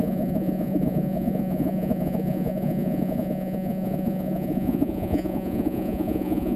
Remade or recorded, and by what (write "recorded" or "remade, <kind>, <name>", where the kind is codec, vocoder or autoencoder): remade, vocoder, Vocos